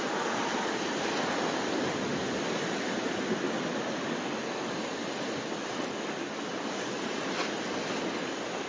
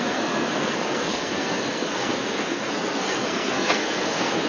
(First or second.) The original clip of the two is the first